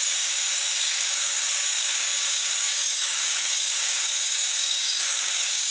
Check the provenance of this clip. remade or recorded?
remade